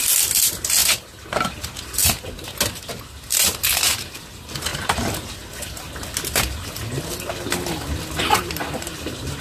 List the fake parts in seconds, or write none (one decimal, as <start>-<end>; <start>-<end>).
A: none